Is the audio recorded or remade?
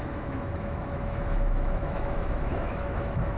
remade